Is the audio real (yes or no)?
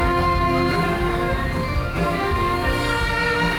no